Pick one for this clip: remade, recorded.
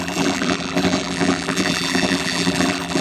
remade